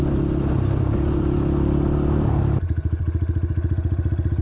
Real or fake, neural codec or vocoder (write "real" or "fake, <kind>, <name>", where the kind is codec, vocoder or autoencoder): real